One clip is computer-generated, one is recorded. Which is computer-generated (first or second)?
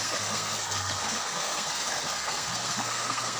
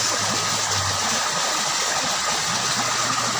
first